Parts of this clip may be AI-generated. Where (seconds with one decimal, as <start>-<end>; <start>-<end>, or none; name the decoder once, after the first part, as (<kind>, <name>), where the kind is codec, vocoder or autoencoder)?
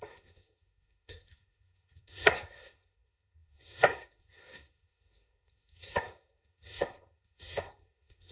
0.0-8.3 (codec, SNAC)